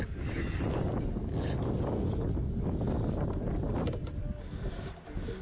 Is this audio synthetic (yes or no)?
no